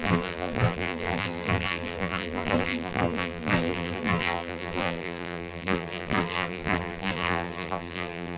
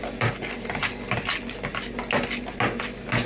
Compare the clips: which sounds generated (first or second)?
first